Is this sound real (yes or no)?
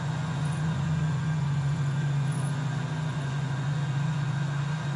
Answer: no